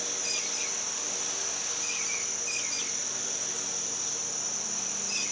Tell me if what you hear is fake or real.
real